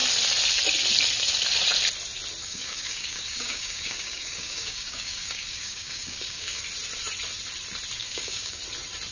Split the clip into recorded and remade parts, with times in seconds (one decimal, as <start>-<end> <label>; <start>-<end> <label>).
0.0-2.4 recorded; 2.4-6.6 remade; 6.6-8.0 recorded; 8.0-8.6 remade; 8.6-9.1 recorded